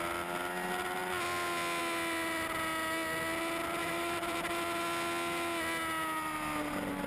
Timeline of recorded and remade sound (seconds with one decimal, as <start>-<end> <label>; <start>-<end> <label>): 0.0-3.8 recorded; 3.8-4.6 remade; 4.6-7.1 recorded